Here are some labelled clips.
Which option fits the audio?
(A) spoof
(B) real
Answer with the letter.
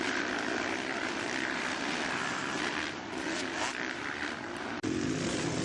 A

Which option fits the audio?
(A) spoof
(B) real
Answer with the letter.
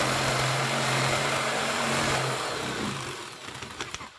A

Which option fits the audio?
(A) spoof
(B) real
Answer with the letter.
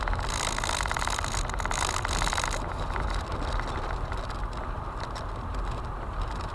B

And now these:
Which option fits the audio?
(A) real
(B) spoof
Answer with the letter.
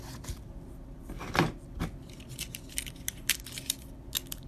A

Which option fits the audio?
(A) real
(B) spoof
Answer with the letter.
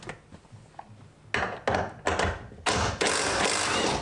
A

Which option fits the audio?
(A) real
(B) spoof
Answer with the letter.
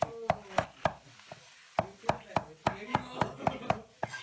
A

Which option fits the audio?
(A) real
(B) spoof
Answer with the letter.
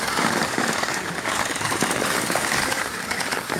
B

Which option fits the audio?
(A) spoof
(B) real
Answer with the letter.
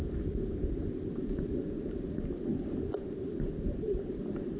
B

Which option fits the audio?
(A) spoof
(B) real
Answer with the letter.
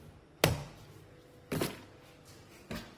B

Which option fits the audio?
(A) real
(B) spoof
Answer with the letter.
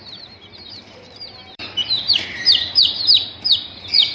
B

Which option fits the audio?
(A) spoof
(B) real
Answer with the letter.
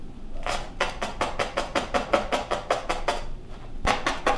B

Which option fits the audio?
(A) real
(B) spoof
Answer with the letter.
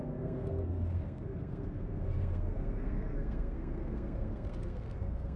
B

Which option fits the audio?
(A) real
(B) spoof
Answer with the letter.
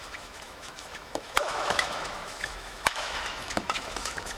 B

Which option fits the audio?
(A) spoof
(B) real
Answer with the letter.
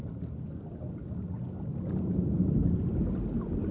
B